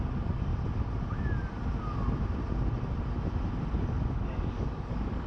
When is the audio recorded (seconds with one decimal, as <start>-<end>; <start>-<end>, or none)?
0.5-3.7